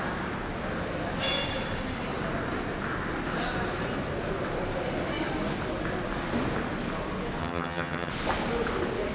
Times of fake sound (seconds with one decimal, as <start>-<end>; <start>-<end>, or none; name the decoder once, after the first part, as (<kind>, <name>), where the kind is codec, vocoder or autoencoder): 7.4-8.1 (vocoder, HiFi-GAN)